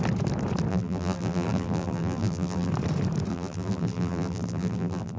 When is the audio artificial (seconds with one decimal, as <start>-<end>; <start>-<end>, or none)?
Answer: 0.7-2.7; 3.3-5.2